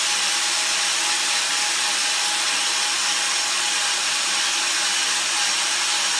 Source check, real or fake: real